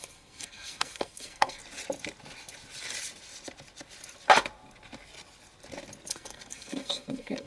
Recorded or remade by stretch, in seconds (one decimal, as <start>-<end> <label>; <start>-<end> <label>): 0.0-1.6 remade; 1.6-6.1 recorded; 6.1-7.5 remade